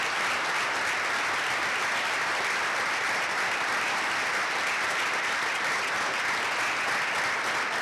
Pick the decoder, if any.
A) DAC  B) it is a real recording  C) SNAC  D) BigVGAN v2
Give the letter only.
B